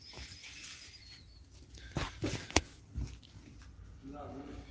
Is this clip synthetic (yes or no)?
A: no